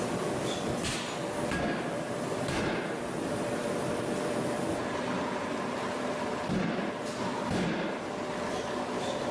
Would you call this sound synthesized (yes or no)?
no